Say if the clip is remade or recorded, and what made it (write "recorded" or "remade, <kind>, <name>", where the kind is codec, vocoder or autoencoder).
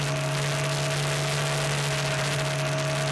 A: recorded